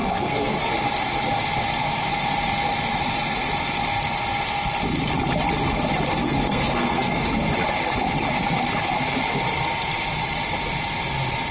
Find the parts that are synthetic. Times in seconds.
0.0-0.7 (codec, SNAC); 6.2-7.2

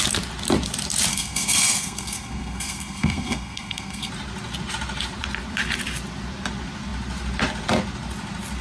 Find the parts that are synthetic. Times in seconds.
1.1-4.1 (codec, SNAC)

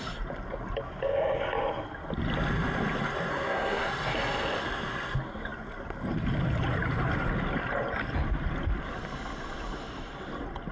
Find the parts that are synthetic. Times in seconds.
3.3-3.9 (codec, SNAC)

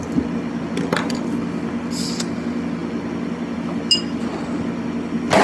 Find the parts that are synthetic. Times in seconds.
none

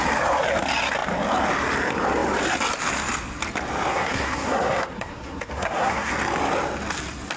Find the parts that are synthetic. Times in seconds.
3.9-6.1 (codec, SNAC)

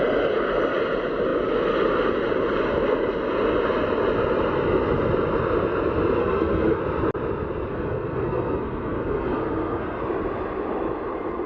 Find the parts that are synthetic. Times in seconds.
6.2-6.8 (codec, SNAC); 7.7-10.0